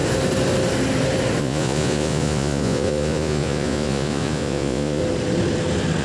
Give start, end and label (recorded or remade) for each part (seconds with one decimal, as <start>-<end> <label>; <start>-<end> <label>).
0.0-1.4 recorded; 1.4-5.0 remade; 5.0-6.0 recorded